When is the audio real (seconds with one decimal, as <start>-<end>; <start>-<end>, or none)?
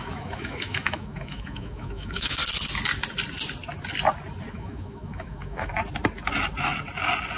2.4-4.5; 5.7-7.4